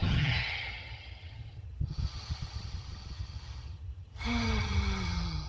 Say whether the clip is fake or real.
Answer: fake